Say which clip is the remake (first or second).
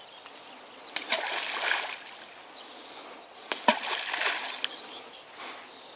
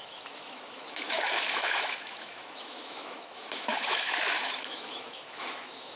second